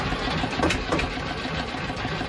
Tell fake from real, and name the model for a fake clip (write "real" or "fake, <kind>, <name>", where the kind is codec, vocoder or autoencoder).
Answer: real